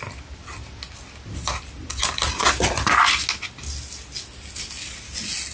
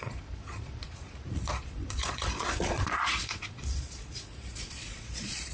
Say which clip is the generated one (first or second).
second